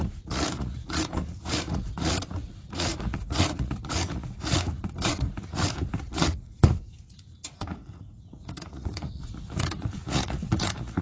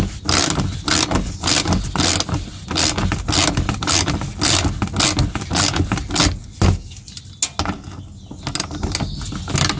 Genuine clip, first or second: second